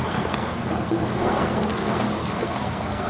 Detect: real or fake fake